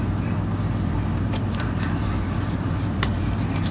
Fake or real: fake